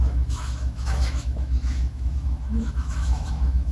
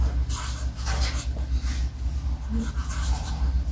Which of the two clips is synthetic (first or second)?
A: first